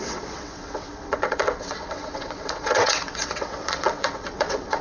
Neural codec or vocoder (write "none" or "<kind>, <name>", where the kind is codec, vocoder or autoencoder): vocoder, WaveNeXt